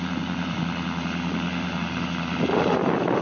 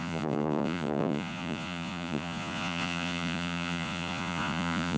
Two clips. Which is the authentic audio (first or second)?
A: first